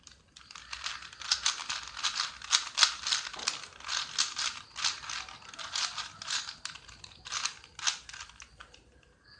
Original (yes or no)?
yes